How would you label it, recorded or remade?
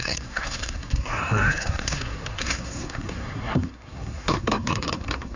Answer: remade